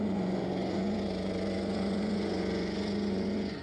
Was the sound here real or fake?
fake